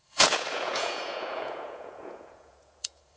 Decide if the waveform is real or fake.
fake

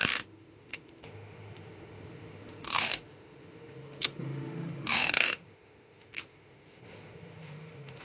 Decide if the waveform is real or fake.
fake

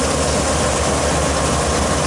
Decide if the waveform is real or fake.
real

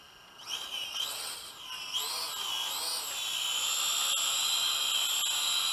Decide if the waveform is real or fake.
real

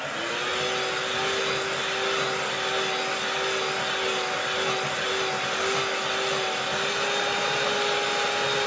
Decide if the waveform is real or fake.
real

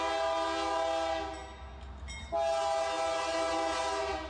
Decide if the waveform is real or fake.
real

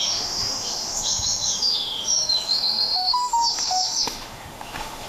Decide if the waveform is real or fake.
fake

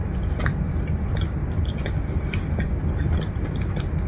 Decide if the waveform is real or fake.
fake